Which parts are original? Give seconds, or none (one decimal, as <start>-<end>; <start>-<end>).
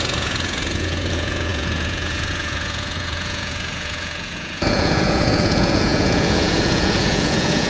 none